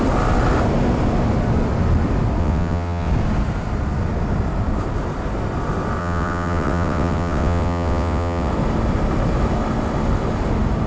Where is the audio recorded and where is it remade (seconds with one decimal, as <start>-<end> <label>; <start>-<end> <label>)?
0.0-2.4 recorded; 2.4-3.1 remade; 3.1-6.0 recorded; 6.0-8.5 remade; 8.5-10.9 recorded